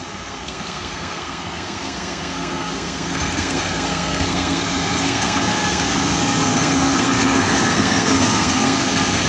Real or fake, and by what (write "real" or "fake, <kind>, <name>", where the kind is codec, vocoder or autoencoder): fake, codec, SNAC